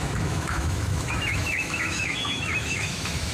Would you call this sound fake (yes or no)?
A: yes